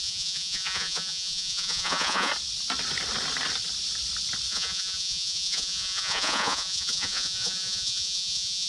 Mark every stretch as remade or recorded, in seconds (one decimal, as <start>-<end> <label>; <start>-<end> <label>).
0.0-2.3 remade; 2.3-4.5 recorded; 4.5-8.7 remade

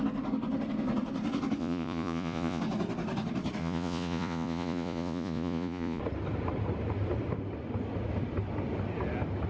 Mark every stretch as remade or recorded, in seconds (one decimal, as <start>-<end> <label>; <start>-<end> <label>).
0.0-1.6 recorded; 1.6-2.6 remade; 2.6-3.6 recorded; 3.6-6.0 remade; 6.0-9.5 recorded

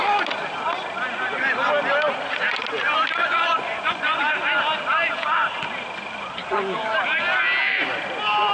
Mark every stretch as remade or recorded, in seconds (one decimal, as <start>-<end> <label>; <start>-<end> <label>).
0.0-3.2 recorded; 3.2-4.2 remade; 4.2-6.4 recorded; 6.4-6.9 remade; 6.9-8.5 recorded

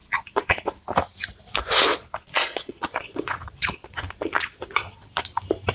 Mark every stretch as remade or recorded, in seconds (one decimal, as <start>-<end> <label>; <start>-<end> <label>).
0.0-0.6 remade; 0.6-1.9 recorded; 1.9-5.3 remade; 5.3-5.7 recorded

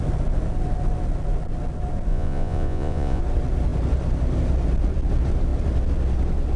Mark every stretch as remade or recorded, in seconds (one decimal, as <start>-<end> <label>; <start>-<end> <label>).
0.0-2.1 recorded; 2.1-3.2 remade; 3.2-6.6 recorded

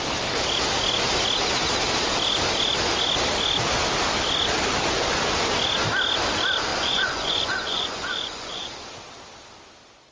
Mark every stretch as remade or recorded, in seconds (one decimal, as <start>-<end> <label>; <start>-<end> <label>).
0.0-6.7 recorded; 6.7-8.7 remade; 8.7-10.1 recorded